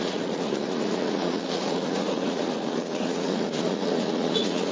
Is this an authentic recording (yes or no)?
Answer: no